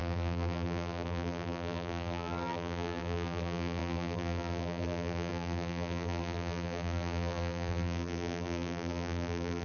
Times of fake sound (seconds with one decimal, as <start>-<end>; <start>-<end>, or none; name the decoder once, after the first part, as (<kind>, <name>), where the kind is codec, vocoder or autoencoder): 0.0-9.6 (vocoder, BigVGAN v2)